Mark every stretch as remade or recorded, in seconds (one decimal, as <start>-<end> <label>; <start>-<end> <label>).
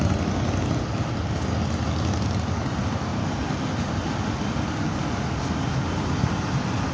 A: 0.0-6.9 recorded